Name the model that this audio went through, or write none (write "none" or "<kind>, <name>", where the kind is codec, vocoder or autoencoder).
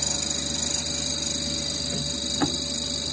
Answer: none